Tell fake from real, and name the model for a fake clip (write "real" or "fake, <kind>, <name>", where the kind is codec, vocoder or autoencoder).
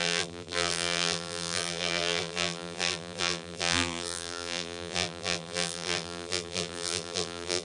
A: fake, vocoder, BigVGAN v2